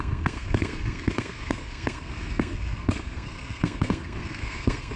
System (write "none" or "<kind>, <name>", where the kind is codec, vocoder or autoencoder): codec, SNAC